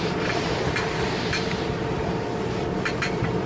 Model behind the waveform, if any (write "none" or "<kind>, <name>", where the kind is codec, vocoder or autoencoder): none